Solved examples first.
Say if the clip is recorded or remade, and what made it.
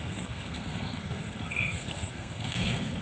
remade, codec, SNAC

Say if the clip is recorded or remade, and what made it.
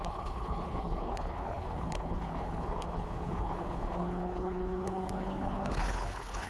remade, codec, HILCodec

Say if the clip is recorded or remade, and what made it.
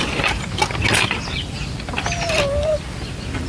recorded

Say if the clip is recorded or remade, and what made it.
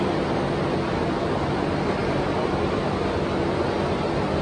recorded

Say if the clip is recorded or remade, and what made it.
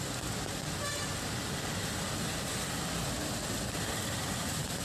recorded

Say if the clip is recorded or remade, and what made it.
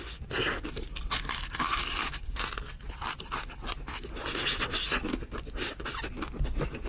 recorded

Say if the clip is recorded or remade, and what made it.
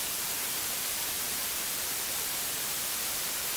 remade, vocoder, BigVGAN v2